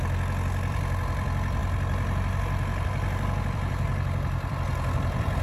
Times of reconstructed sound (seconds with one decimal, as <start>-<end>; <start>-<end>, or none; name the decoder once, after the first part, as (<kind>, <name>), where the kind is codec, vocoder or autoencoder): 0.0-5.4 (vocoder, BigVGAN v2)